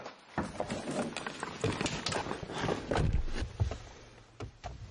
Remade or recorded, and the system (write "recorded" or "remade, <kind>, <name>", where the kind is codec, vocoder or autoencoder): recorded